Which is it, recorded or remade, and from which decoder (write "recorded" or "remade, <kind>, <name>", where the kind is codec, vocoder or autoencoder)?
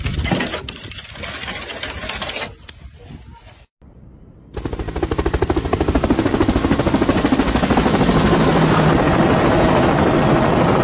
recorded